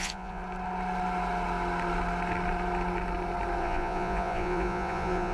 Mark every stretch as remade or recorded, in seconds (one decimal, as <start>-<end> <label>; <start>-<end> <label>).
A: 0.0-0.4 remade; 0.4-3.6 recorded; 3.6-5.3 remade